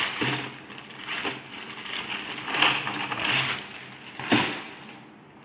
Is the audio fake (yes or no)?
no